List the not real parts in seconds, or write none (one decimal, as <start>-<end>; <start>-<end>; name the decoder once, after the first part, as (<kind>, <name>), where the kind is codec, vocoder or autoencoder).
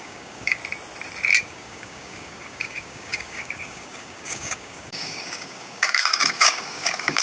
0.0-0.6 (codec, DAC); 1.4-7.2